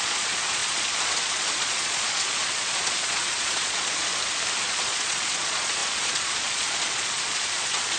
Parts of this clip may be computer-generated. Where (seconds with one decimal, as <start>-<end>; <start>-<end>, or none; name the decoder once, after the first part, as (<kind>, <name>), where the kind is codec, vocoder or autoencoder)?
0.0-4.1 (vocoder, Vocos); 4.6-8.0